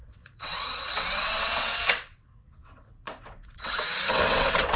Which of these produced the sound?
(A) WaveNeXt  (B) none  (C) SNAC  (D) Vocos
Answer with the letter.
A